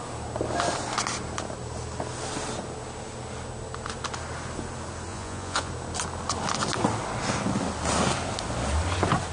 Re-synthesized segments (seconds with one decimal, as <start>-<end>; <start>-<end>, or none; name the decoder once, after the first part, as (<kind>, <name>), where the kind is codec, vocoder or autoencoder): 5.1-5.7 (vocoder, Vocos)